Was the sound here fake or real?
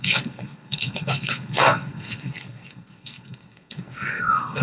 fake